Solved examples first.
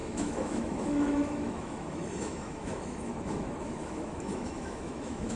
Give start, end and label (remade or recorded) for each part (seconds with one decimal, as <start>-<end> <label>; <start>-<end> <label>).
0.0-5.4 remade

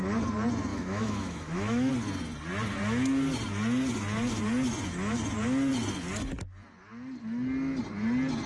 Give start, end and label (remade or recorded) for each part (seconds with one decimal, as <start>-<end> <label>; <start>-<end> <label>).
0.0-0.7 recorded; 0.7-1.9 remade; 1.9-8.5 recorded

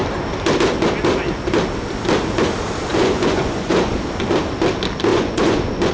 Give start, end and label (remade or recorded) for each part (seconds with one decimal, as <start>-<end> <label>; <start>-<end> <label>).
0.0-2.9 recorded; 2.9-3.9 remade; 3.9-5.1 recorded; 5.1-5.9 remade

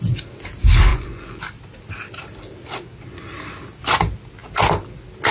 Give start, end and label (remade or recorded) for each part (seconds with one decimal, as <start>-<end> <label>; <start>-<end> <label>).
0.0-0.9 recorded; 0.9-1.4 remade; 1.4-5.3 recorded

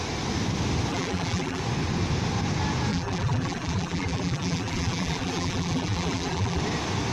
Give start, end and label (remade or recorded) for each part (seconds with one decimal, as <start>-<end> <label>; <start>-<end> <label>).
0.0-0.9 recorded; 0.9-1.6 remade; 1.6-2.9 recorded; 2.9-6.6 remade; 6.6-7.1 recorded

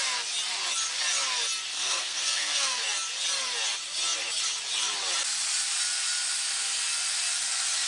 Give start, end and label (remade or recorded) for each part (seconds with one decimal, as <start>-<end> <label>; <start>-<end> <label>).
0.0-1.7 recorded; 1.7-2.8 remade; 2.8-7.9 recorded

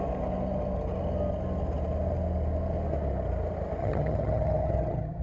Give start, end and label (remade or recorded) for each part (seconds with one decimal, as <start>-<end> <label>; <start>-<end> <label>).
0.0-3.8 recorded; 3.8-5.2 remade